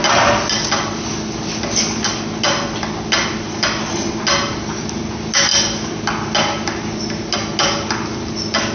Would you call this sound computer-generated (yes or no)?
no